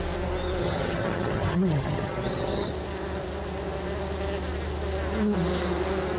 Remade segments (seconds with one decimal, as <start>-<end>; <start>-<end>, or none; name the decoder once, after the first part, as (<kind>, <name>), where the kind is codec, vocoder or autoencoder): 0.6-2.7 (vocoder, HiFi-GAN)